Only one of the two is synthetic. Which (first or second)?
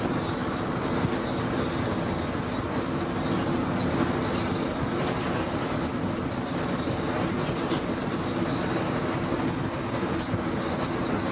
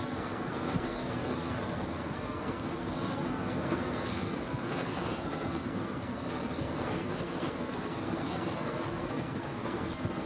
second